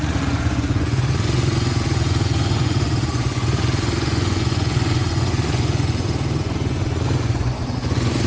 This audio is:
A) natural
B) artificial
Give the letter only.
B